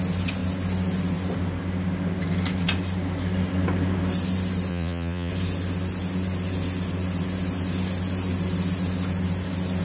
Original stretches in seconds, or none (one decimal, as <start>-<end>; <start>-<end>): 0.0-4.7; 5.3-9.8